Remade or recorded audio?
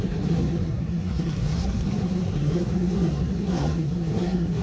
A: remade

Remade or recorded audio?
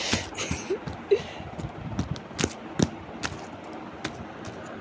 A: recorded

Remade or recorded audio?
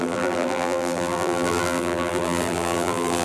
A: remade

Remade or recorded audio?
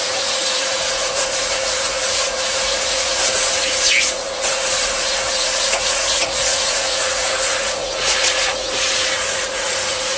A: remade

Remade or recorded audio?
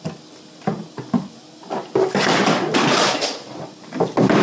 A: recorded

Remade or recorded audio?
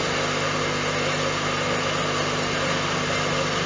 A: recorded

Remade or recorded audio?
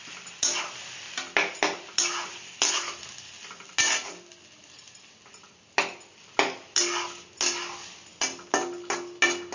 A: recorded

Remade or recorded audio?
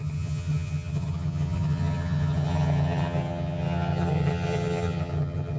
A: remade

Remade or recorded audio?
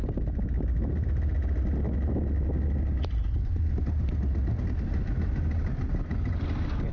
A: recorded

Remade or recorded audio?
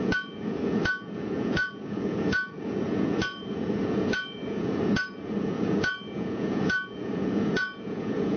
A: remade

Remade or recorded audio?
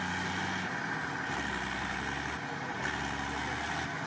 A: recorded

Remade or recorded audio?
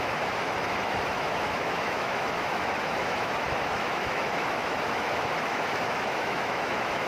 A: remade